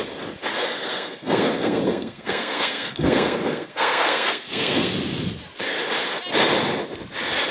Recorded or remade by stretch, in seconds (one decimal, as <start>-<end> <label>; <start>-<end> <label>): 0.0-0.5 recorded; 0.5-4.9 remade; 4.9-7.5 recorded